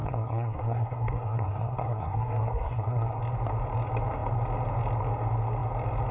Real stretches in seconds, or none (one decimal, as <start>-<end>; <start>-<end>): 3.2-6.1